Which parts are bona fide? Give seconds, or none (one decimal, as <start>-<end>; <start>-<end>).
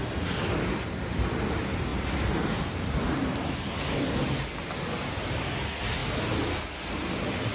0.0-1.9; 4.7-7.5